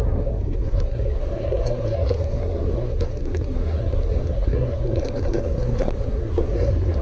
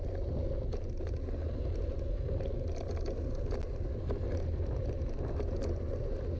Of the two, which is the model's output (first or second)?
first